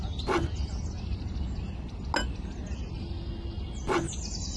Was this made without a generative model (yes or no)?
yes